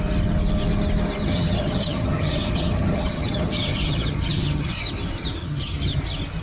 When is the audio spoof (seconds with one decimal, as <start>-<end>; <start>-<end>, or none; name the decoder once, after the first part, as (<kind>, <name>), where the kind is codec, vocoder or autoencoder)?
1.2-4.8 (vocoder, HiFi-GAN); 5.4-6.0